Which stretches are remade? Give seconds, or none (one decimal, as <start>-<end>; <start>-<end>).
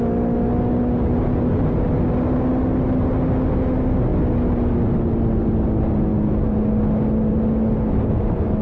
none